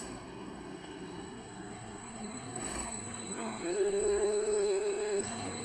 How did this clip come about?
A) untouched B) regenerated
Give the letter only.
B